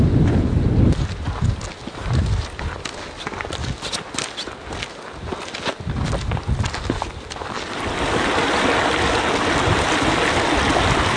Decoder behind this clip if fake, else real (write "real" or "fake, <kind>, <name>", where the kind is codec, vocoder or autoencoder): real